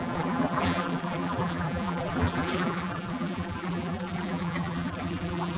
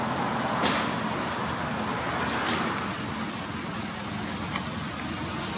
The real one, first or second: second